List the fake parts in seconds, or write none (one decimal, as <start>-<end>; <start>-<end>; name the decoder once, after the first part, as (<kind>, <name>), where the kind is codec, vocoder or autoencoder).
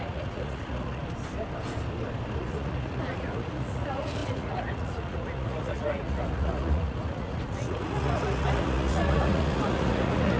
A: 0.0-1.0 (vocoder, Vocos); 2.4-10.4